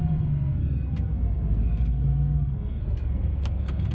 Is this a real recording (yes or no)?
no